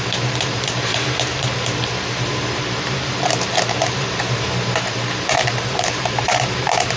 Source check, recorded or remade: remade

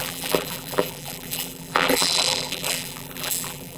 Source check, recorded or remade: remade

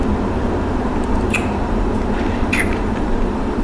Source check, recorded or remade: remade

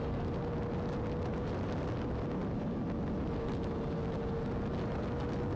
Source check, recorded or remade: recorded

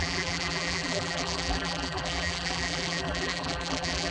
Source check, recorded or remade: remade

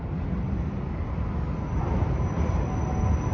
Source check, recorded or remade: recorded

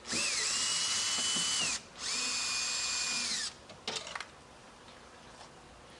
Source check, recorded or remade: recorded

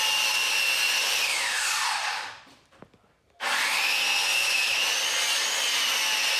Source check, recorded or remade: recorded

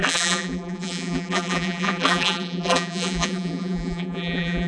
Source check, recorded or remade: remade